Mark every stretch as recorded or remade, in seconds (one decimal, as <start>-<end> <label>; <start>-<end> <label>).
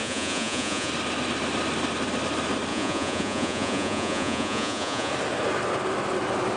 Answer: 0.0-0.9 remade; 0.9-2.7 recorded; 2.7-5.1 remade; 5.1-6.6 recorded